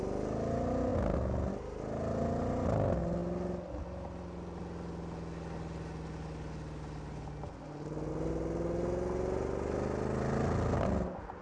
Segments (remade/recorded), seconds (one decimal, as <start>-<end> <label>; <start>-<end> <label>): 0.0-11.4 recorded

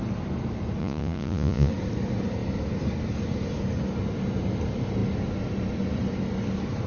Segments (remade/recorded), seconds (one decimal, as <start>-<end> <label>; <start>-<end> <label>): 0.0-0.8 recorded; 0.8-1.7 remade; 1.7-6.9 recorded

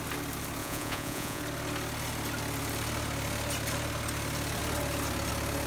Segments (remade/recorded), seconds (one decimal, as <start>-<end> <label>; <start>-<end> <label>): 0.0-0.6 recorded; 0.6-1.4 remade; 1.4-5.7 recorded

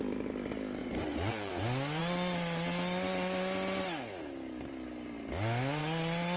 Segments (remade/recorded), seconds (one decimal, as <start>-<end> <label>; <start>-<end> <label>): 0.0-0.8 recorded; 0.8-1.5 remade; 1.5-6.4 recorded

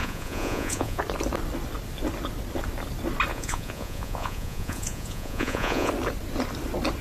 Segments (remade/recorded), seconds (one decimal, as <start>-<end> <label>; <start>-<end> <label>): 0.0-1.0 remade; 1.0-3.3 recorded; 3.3-5.9 remade; 5.9-7.0 recorded

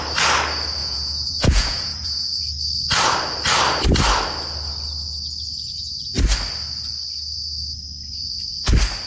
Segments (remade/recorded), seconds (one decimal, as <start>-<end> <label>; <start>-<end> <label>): 0.0-0.8 recorded; 0.8-2.4 remade; 2.4-9.1 recorded

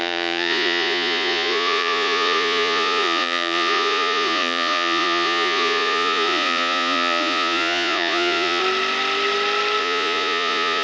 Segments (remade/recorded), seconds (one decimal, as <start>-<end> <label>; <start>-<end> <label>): 0.0-8.6 remade; 8.6-9.8 recorded; 9.8-10.8 remade